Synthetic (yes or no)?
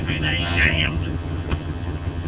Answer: yes